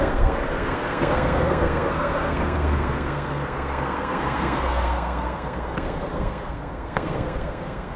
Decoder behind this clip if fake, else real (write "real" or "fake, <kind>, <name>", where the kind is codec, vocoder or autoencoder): fake, codec, SNAC